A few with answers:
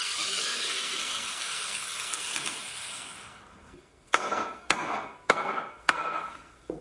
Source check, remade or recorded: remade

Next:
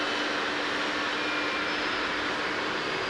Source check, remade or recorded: recorded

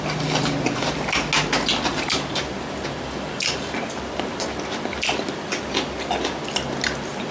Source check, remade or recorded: recorded